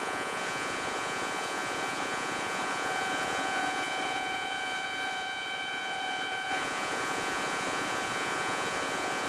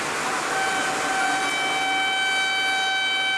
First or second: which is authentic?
second